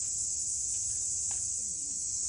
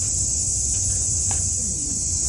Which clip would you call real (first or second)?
first